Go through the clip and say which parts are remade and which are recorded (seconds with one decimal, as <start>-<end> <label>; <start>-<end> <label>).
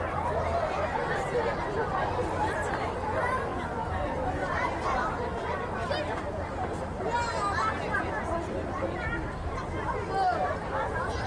0.0-11.3 recorded